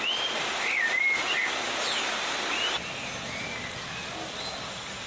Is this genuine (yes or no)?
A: yes